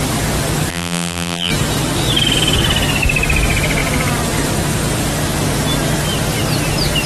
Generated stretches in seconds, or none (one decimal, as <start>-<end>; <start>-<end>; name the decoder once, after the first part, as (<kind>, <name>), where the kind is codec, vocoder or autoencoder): 0.7-1.5 (vocoder, BigVGAN v2)